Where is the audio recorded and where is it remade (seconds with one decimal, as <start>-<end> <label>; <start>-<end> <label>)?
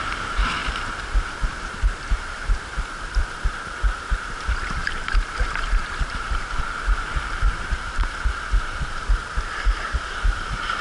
0.0-10.8 remade